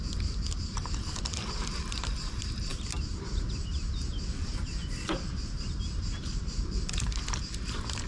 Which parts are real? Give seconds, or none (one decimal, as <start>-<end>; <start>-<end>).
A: 0.0-8.1